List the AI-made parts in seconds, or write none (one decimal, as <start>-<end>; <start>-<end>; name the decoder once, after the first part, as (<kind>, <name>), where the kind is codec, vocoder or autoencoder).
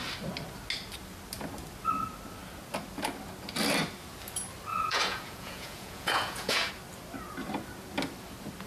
4.7-6.7 (vocoder, Vocos)